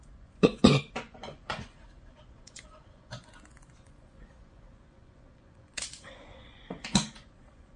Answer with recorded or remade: remade